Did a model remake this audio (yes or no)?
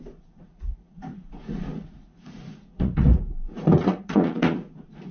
yes